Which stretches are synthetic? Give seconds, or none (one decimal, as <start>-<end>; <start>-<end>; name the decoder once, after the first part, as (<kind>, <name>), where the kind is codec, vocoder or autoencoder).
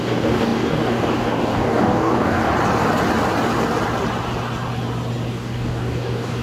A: 0.0-2.5 (codec, DAC); 5.3-6.4